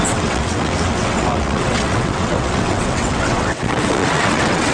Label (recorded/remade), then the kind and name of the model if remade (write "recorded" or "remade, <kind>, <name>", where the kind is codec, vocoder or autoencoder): remade, vocoder, WaveNeXt